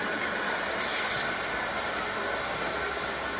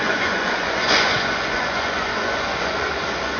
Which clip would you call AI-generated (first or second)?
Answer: second